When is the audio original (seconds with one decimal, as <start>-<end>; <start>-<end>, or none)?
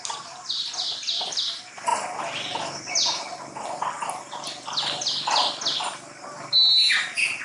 0.0-7.4